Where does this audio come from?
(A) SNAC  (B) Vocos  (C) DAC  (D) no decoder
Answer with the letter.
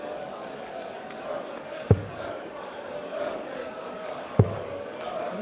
C